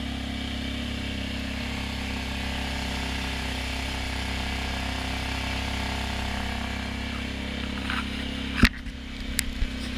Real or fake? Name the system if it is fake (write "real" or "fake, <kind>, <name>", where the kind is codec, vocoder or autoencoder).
real